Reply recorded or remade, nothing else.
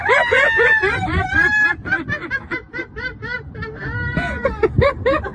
recorded